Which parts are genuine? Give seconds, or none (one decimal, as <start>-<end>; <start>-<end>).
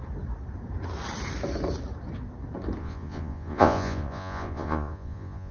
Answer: 0.0-2.8